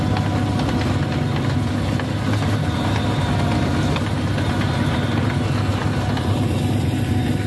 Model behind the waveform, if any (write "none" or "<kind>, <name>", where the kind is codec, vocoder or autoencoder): none